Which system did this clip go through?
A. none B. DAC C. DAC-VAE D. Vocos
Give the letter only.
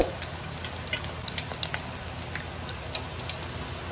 A